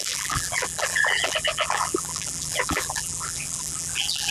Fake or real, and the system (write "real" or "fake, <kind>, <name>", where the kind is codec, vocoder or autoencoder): fake, vocoder, BigVGAN v2